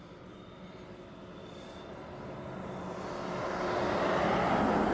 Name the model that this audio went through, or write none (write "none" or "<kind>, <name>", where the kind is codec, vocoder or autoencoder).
none